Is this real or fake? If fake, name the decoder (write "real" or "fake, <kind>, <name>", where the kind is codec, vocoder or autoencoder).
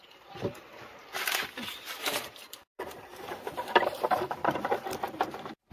fake, vocoder, BigVGAN v2